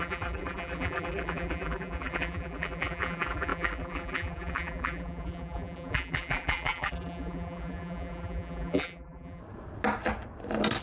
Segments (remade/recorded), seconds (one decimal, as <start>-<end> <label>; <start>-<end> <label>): 0.0-9.4 remade; 9.4-10.8 recorded